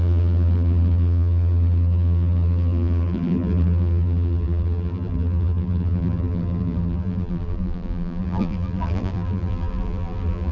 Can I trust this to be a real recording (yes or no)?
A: no